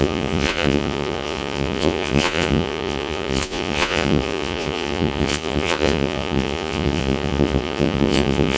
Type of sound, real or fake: fake